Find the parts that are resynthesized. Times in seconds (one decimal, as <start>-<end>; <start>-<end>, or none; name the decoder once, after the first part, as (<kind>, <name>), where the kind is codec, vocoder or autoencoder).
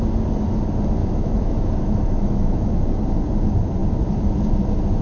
1.0-2.8 (autoencoder, DAC-VAE)